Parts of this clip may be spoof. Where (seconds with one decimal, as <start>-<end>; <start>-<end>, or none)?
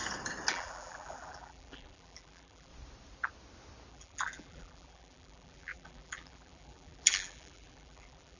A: 0.5-2.7; 3.9-8.4